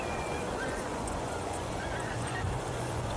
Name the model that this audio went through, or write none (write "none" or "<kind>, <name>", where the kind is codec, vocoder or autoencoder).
vocoder, Vocos